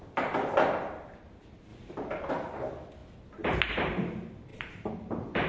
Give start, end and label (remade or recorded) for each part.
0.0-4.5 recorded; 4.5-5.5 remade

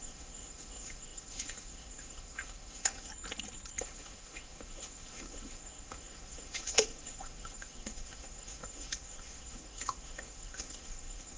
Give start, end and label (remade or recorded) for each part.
0.0-3.1 remade; 3.1-3.8 recorded; 3.8-11.4 remade

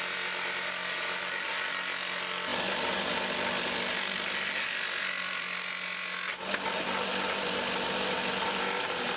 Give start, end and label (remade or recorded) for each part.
0.0-9.2 recorded

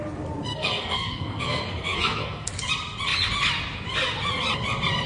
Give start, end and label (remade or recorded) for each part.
0.0-0.5 recorded; 0.5-2.5 remade; 2.5-5.1 recorded

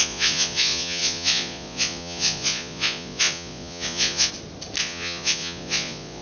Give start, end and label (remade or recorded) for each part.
0.0-4.3 remade; 4.3-4.8 recorded; 4.8-6.2 remade

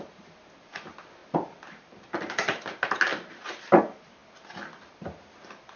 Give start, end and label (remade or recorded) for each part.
0.0-5.8 recorded

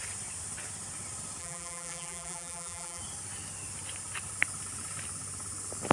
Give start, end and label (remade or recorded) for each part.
0.0-1.4 recorded; 1.4-3.0 remade; 3.0-5.9 recorded

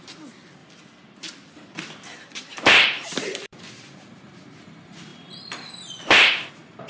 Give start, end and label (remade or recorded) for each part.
0.0-0.6 recorded; 0.6-3.7 remade; 3.7-5.1 recorded; 5.1-6.9 remade